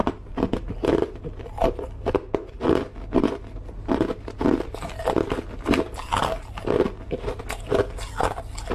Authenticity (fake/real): real